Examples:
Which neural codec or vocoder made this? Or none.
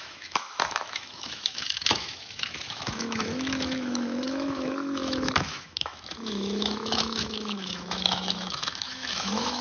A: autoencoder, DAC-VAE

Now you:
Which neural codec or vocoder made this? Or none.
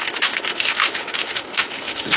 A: autoencoder, DAC-VAE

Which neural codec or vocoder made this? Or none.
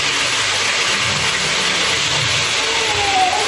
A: none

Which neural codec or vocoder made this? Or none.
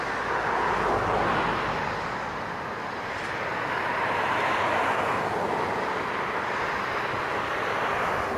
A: none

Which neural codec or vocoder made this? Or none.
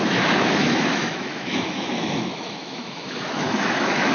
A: autoencoder, DAC-VAE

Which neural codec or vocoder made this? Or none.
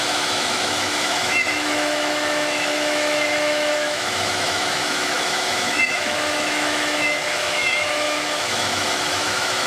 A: autoencoder, DAC-VAE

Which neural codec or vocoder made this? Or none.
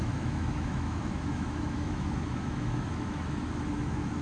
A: autoencoder, DAC-VAE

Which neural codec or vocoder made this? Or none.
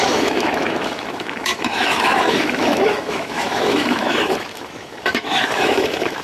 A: autoencoder, DAC-VAE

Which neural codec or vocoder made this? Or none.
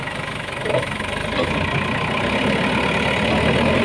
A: none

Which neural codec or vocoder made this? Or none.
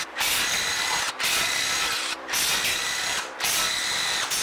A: none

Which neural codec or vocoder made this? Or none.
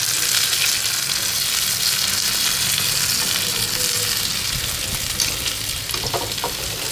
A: none